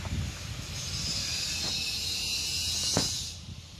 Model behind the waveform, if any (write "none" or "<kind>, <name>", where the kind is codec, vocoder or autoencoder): none